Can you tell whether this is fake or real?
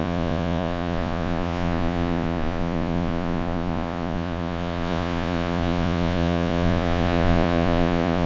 fake